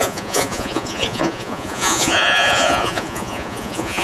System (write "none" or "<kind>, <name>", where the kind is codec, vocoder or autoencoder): vocoder, Vocos